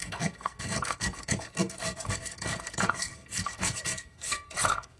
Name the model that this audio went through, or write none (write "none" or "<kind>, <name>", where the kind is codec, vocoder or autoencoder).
codec, SNAC